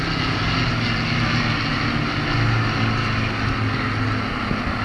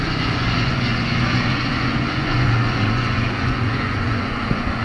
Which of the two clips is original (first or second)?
first